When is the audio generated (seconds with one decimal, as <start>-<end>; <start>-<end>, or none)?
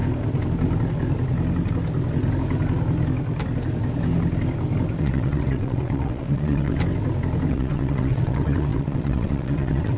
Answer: 5.0-6.8; 7.5-10.0